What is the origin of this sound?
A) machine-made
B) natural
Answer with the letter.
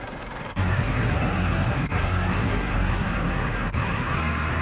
A